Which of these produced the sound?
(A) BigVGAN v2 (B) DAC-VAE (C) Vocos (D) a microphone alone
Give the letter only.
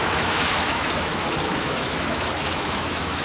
B